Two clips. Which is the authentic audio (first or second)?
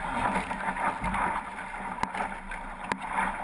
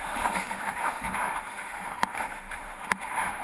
first